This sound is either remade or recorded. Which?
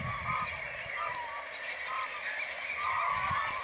recorded